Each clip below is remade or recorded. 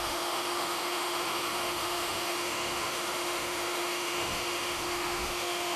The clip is remade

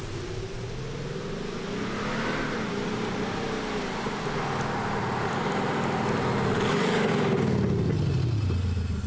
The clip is recorded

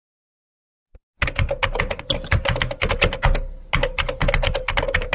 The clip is recorded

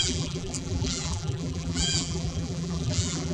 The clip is remade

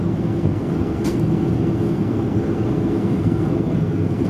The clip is remade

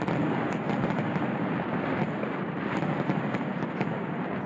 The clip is recorded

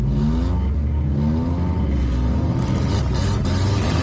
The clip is recorded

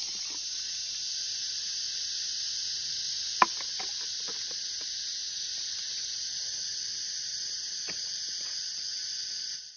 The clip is recorded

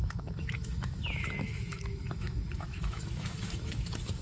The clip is remade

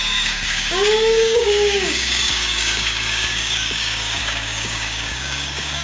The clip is remade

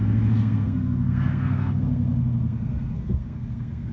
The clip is remade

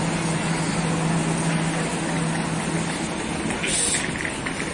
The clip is recorded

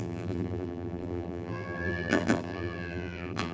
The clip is remade